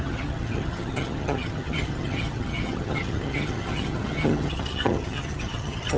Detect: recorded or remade remade